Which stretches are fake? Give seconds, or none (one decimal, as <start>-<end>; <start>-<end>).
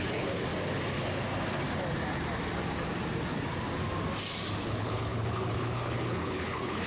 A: 0.0-0.5; 4.6-6.9